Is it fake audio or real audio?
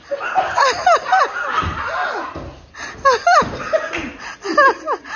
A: real